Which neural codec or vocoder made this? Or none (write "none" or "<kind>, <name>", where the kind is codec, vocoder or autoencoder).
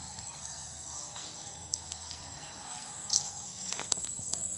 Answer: codec, SNAC